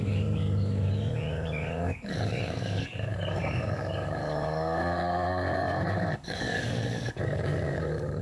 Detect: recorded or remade remade